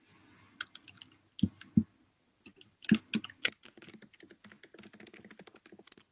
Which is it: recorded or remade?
recorded